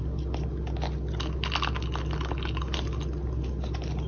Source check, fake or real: real